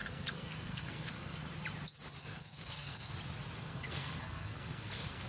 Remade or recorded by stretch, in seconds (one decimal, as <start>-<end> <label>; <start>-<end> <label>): 0.0-1.4 remade; 1.4-2.2 recorded; 2.2-3.1 remade; 3.1-3.6 recorded; 3.6-5.3 remade